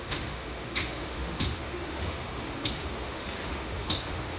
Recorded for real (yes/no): no